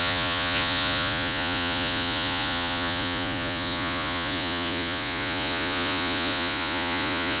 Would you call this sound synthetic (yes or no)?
yes